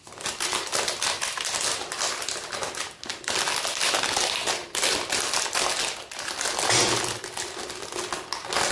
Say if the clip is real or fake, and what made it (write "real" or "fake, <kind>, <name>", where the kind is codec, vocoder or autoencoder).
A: real